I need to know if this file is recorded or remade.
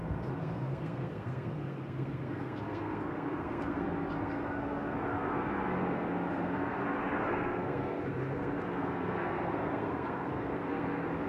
remade